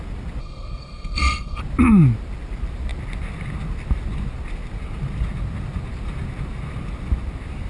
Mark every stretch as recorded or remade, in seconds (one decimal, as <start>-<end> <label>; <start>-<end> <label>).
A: 0.0-0.4 recorded; 0.4-1.6 remade; 1.6-7.7 recorded